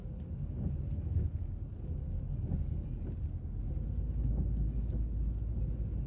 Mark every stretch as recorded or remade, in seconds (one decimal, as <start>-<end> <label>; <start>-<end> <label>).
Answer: 0.0-6.1 recorded